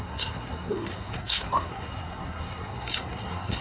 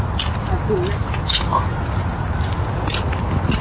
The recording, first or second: second